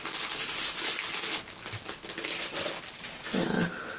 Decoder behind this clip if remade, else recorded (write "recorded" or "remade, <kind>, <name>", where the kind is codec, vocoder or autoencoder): recorded